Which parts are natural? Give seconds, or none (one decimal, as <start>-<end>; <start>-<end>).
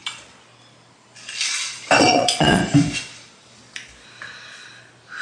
0.0-2.0; 2.6-5.2